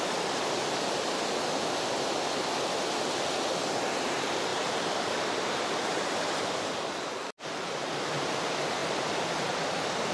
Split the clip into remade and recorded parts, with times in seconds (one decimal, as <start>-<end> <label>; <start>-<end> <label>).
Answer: 0.0-4.5 recorded; 4.5-6.7 remade; 6.7-10.1 recorded